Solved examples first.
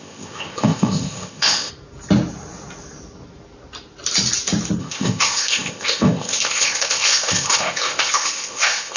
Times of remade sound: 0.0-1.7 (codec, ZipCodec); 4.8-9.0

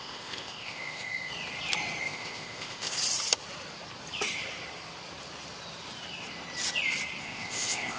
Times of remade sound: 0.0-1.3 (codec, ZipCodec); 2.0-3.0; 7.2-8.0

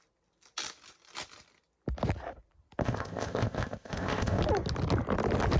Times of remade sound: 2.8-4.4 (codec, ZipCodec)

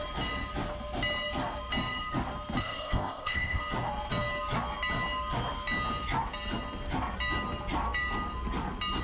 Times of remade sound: 2.6-3.6 (codec, ZipCodec)

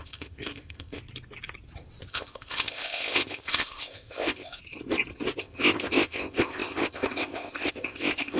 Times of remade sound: 0.0-1.0 (codec, ZipCodec); 2.1-4.6; 5.4-8.4

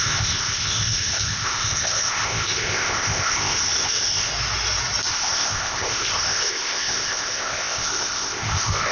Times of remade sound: 0.0-4.3 (codec, ZipCodec); 5.1-8.9

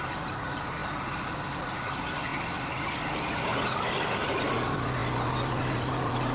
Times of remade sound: none